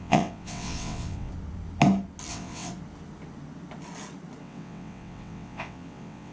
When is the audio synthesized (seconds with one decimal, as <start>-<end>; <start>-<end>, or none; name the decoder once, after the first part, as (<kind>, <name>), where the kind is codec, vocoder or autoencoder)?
0.0-1.3 (vocoder, WaveNeXt); 2.3-2.7; 4.4-6.3